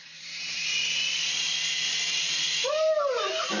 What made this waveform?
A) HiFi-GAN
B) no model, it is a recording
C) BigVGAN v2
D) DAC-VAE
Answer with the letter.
C